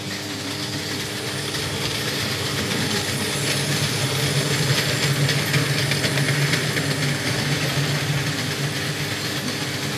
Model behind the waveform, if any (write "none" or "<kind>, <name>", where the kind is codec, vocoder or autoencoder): none